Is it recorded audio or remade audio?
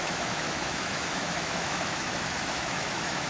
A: remade